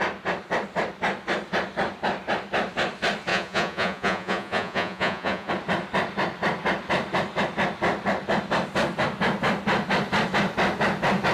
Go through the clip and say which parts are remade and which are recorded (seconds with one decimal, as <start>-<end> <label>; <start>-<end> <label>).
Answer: 0.0-3.3 recorded; 3.3-5.5 remade; 5.5-11.3 recorded